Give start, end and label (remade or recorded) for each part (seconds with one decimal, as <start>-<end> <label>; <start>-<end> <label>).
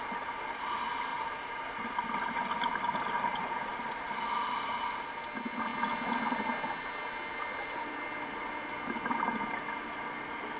0.0-10.6 recorded